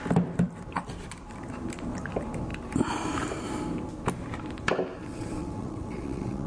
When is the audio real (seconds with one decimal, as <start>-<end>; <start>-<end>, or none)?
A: 0.0-5.0